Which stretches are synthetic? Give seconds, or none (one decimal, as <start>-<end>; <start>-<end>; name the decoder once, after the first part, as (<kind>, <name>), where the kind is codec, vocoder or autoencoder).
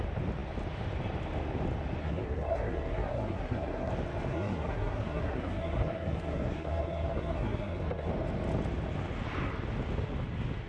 2.0-3.9 (codec, SNAC); 4.3-8.1